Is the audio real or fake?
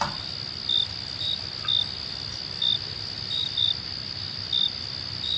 real